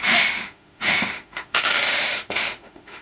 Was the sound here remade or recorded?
remade